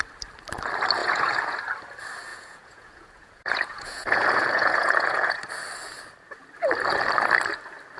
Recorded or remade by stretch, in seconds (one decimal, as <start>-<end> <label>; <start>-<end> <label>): 0.0-1.0 recorded; 1.0-1.6 remade; 1.6-2.3 recorded; 2.3-5.4 remade; 5.4-8.0 recorded